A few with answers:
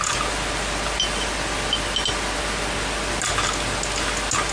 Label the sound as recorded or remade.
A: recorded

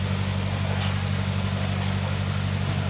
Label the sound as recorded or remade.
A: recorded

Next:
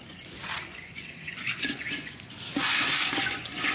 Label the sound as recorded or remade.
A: remade